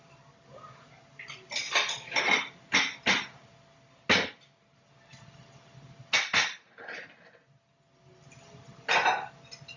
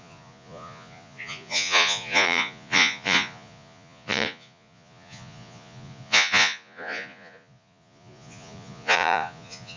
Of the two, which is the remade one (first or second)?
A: second